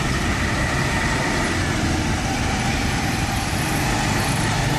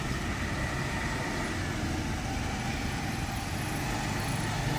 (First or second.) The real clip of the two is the second